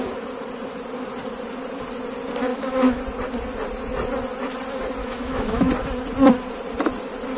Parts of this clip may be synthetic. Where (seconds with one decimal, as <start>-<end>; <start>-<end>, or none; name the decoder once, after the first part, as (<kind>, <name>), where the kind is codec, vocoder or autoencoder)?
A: 2.5-3.0 (autoencoder, DAC-VAE); 5.0-5.7